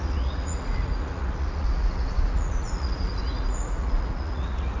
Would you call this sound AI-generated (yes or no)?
yes